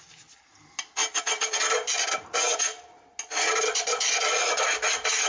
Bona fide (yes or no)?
yes